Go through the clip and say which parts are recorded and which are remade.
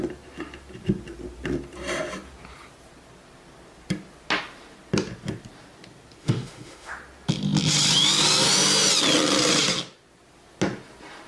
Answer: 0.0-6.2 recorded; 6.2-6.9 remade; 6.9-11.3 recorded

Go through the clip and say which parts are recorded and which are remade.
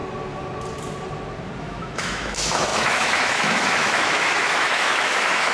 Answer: 0.0-1.6 recorded; 1.6-5.5 remade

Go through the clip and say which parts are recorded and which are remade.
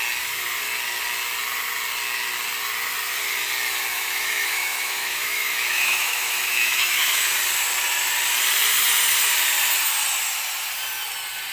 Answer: 0.0-3.9 recorded; 3.9-7.2 remade; 7.2-11.5 recorded